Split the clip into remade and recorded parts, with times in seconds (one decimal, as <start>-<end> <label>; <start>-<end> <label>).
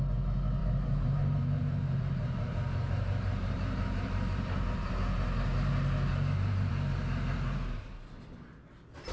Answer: 0.0-0.6 recorded; 0.6-4.9 remade; 4.9-6.1 recorded; 6.1-6.7 remade; 6.7-9.1 recorded